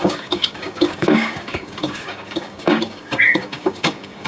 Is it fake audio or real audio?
fake